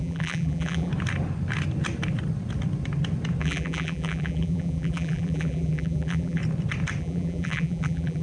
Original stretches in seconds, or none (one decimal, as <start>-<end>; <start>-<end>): 0.9-3.4; 6.4-7.0